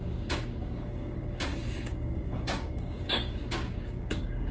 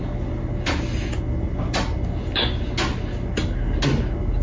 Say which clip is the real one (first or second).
second